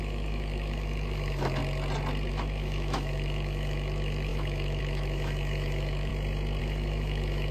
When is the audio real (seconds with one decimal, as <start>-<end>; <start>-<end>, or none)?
1.6-2.3; 6.1-6.6